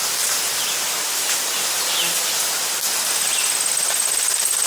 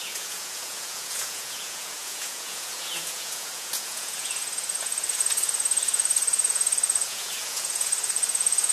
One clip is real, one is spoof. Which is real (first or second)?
first